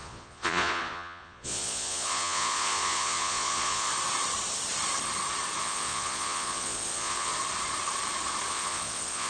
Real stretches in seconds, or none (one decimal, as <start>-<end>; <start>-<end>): 3.9-5.6; 7.3-8.5